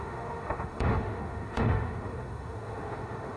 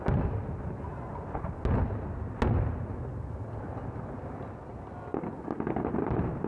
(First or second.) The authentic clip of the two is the second